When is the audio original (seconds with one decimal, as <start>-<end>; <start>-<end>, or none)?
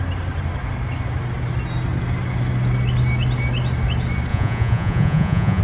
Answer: 0.0-4.3